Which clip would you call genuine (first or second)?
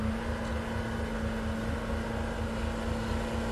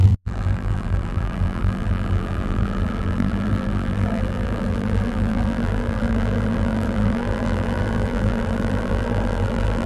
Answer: first